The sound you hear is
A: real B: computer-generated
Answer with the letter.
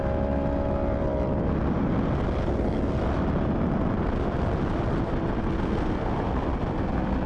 A